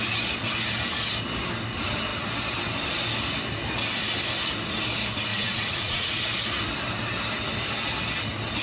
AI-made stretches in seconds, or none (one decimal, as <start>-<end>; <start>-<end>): 5.3-6.2